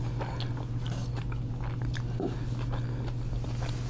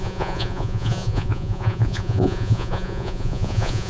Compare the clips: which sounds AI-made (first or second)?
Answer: second